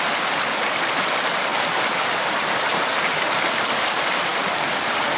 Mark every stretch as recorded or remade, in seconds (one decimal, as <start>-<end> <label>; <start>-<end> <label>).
0.0-5.2 recorded